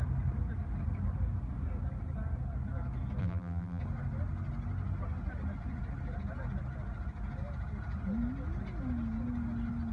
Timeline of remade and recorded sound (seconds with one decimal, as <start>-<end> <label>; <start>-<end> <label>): 0.0-3.2 recorded; 3.2-3.8 remade; 3.8-9.9 recorded